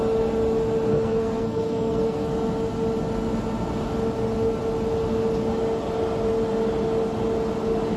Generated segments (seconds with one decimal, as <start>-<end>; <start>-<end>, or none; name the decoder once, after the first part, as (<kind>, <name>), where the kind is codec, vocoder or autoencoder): 0.9-2.3 (codec, SNAC)